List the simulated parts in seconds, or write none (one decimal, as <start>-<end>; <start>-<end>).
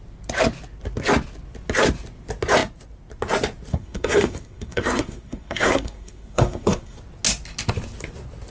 3.7-7.0